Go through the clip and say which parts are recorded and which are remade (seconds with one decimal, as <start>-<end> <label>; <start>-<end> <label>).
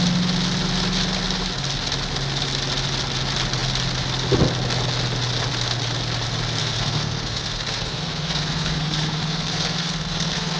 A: 0.0-6.6 recorded; 6.6-10.6 remade